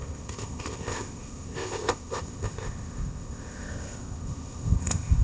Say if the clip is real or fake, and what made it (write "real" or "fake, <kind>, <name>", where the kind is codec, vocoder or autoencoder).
fake, codec, ZipCodec